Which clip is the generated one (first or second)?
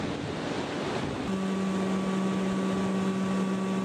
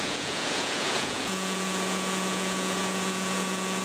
second